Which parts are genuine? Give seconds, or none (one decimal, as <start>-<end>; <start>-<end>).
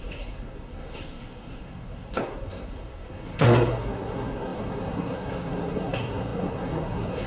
none